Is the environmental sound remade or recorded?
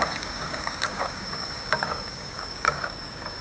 remade